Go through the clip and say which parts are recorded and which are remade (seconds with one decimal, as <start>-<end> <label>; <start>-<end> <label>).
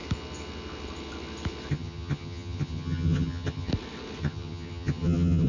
0.0-1.7 recorded; 1.7-3.7 remade; 3.7-4.2 recorded; 4.2-5.5 remade